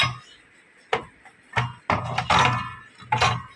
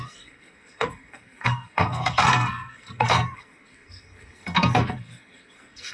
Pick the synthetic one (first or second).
second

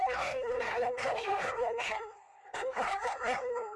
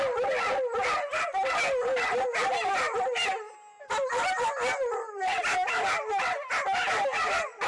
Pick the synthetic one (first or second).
first